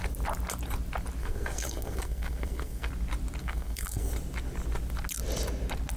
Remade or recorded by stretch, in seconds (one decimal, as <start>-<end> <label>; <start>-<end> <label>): 0.0-1.2 recorded; 1.2-2.9 remade; 2.9-3.4 recorded; 3.4-4.1 remade; 4.1-6.0 recorded